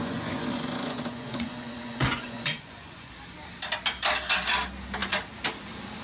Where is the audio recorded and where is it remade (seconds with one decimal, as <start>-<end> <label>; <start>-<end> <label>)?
0.0-3.1 remade; 3.1-6.0 recorded